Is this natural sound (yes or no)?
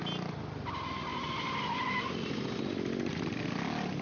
yes